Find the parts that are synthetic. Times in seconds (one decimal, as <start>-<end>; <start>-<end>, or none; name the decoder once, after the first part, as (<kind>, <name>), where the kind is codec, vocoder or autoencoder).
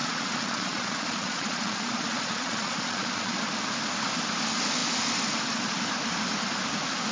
0.0-3.4 (vocoder, Vocos)